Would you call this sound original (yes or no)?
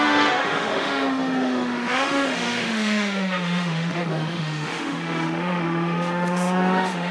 no